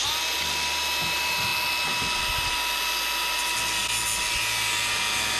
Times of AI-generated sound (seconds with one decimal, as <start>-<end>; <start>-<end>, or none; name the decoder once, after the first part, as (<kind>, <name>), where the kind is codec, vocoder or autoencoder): none